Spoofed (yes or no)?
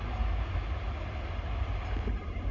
no